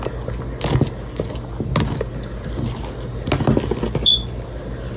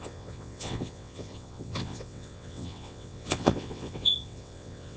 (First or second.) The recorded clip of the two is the first